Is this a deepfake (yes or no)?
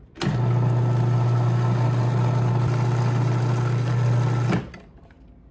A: no